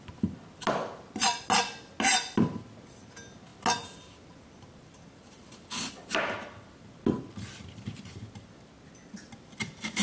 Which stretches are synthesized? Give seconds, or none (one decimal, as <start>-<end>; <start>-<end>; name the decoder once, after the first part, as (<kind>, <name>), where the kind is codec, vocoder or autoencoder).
none